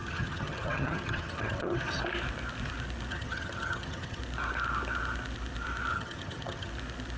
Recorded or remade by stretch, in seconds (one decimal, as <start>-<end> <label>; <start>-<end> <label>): 0.0-2.0 remade; 2.0-3.1 recorded; 3.1-4.2 remade; 4.2-5.9 recorded; 5.9-6.7 remade; 6.7-7.2 recorded